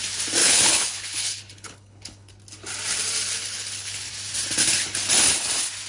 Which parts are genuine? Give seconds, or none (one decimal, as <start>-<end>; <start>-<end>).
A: 0.0-0.4; 2.3-3.4; 4.1-5.9

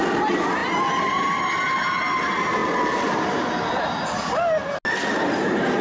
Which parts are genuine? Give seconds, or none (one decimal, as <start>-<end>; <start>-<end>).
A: 0.0-5.8

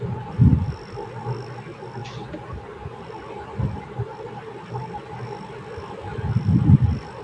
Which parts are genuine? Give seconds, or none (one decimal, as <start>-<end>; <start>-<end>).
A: 0.0-7.2

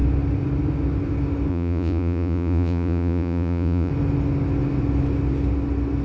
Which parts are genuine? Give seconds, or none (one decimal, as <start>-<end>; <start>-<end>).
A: 0.0-1.5; 3.9-6.0

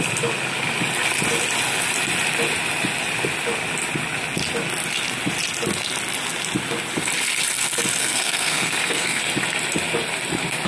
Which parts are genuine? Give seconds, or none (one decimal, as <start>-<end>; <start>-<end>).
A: 0.0-8.0; 9.2-10.7